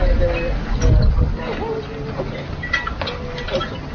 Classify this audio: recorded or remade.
recorded